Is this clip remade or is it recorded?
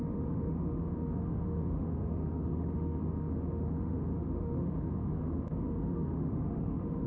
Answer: remade